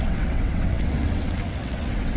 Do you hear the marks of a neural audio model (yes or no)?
yes